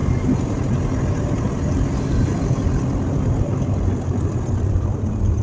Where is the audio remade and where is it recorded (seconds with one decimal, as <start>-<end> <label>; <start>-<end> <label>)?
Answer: 0.0-5.4 recorded